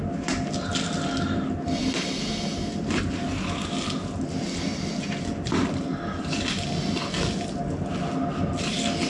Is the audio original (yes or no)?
yes